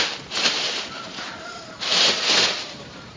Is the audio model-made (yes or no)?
yes